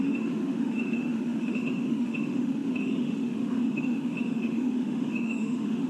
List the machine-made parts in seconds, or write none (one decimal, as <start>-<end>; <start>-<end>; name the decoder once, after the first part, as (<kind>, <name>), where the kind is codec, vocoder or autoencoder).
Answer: 0.0-5.9 (autoencoder, DAC-VAE)